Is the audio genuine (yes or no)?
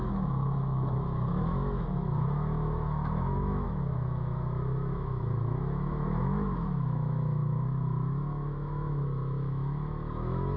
no